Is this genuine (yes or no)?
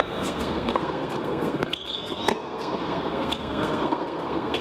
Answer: no